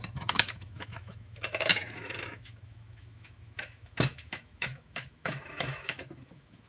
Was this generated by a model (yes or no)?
yes